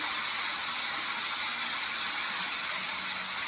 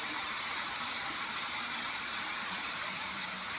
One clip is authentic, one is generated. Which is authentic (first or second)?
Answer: first